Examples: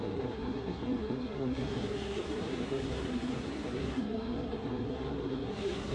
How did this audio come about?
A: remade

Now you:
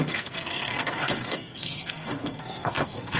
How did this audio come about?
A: remade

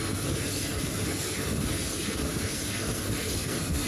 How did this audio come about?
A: remade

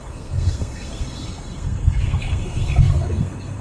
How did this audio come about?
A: remade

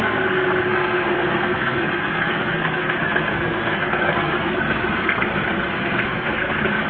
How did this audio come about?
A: remade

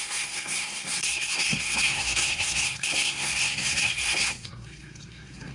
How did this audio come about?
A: remade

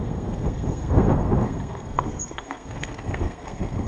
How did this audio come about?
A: remade